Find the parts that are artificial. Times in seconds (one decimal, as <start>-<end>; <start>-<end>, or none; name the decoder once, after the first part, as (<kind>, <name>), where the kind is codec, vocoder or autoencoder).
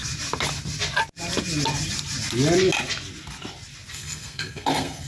3.9-5.1 (codec, SNAC)